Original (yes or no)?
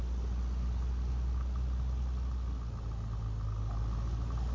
yes